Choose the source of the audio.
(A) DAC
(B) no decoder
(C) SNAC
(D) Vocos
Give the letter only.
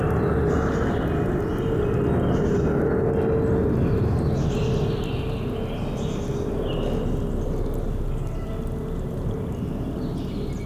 B